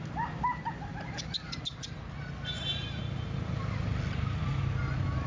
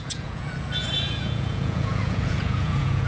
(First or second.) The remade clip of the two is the second